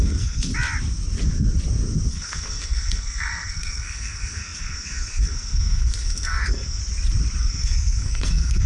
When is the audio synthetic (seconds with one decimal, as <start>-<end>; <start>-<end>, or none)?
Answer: 0.0-0.5; 2.1-6.8; 7.4-8.7